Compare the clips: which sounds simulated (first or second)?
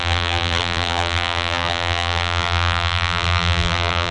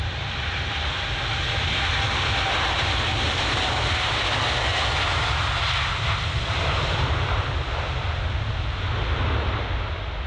first